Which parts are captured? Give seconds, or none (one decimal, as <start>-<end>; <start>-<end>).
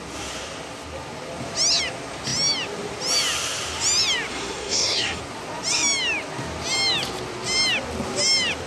0.0-4.3; 5.2-8.7